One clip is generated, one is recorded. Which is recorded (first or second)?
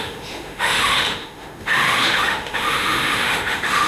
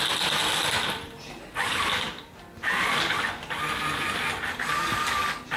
second